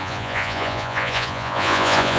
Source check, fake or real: fake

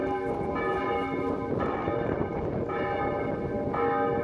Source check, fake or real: real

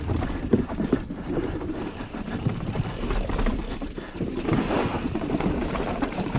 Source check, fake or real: fake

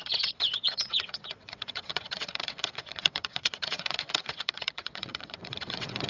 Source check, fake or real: fake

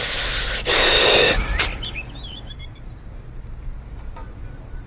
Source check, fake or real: real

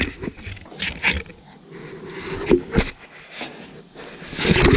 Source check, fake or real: real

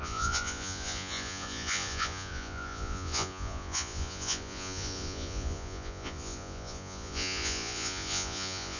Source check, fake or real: fake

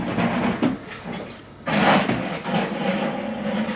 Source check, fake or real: real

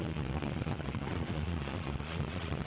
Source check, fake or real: fake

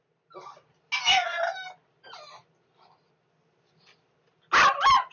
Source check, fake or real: real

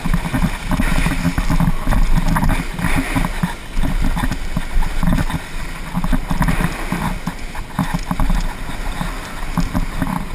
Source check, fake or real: real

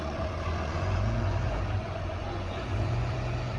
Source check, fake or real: fake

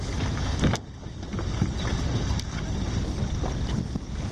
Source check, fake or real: real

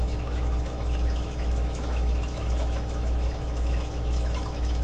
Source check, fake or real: fake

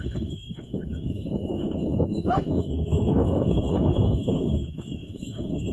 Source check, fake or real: fake